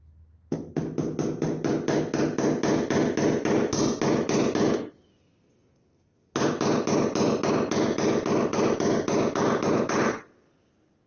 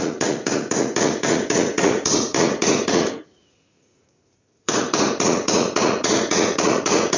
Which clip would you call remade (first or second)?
second